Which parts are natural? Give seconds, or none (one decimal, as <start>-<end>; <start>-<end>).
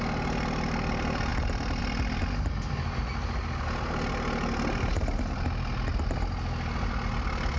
0.0-7.6